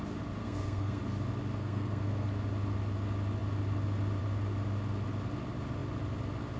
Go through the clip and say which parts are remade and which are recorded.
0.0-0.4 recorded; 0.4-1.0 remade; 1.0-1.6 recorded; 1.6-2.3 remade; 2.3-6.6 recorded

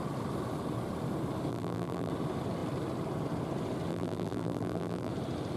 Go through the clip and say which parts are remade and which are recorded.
0.0-1.5 recorded; 1.5-2.1 remade; 2.1-3.9 recorded; 3.9-5.1 remade; 5.1-5.6 recorded

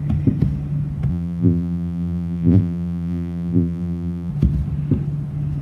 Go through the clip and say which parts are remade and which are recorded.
0.0-1.1 recorded; 1.1-4.3 remade; 4.3-5.6 recorded

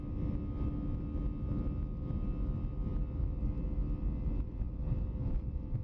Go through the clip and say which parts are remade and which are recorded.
0.0-5.8 recorded

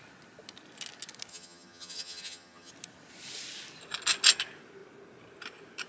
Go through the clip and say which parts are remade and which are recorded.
0.0-1.3 recorded; 1.3-2.7 remade; 2.7-5.9 recorded

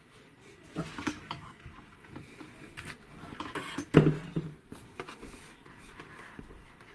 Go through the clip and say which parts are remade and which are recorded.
0.0-0.9 recorded; 0.9-1.7 remade; 1.7-6.9 recorded

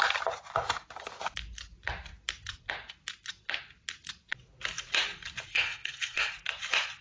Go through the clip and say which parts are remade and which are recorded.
0.0-5.5 recorded; 5.5-6.3 remade; 6.3-7.0 recorded